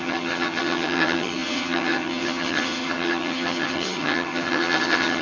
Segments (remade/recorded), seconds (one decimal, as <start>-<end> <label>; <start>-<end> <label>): 0.0-5.2 remade